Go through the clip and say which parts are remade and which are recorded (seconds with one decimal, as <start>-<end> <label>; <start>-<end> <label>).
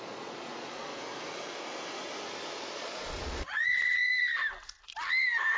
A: 0.0-0.9 remade; 0.9-2.8 recorded; 2.8-4.1 remade; 4.1-5.6 recorded